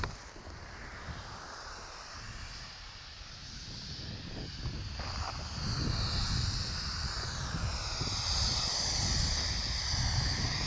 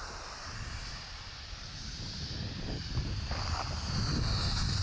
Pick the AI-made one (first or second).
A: second